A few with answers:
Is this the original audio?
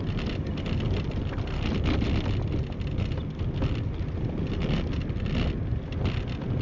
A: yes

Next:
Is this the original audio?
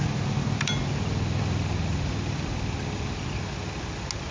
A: yes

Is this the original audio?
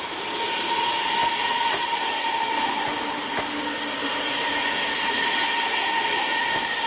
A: yes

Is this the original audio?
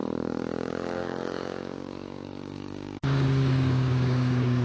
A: no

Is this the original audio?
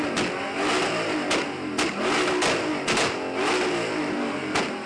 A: yes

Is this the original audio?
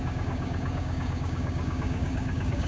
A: no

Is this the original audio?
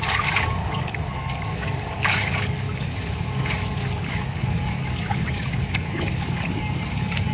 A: no